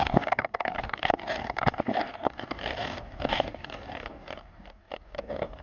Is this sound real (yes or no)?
no